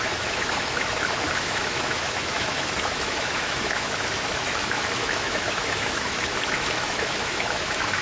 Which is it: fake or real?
fake